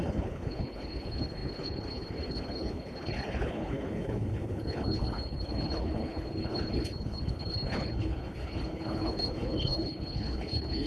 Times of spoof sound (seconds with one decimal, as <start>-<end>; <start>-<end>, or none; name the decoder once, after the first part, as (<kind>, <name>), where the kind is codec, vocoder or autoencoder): 0.0-10.9 (codec, HILCodec)